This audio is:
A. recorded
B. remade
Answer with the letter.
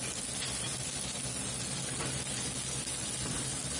A